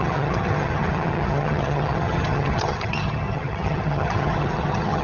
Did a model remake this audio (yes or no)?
yes